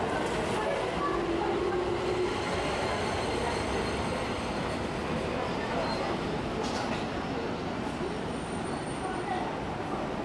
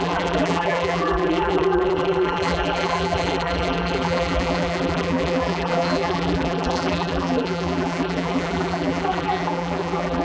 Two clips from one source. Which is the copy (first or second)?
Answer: second